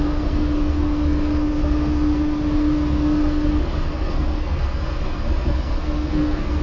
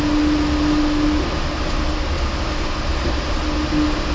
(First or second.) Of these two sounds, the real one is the second